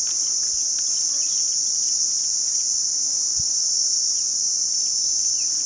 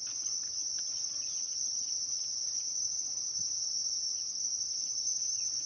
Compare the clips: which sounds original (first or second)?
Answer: first